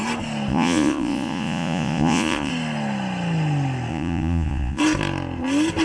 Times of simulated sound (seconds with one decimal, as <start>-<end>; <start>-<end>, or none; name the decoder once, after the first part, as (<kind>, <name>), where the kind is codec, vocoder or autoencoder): 0.5-2.5 (vocoder, Vocos); 3.9-4.8